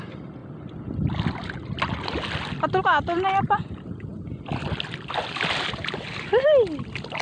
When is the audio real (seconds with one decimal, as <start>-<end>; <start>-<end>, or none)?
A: 0.0-7.2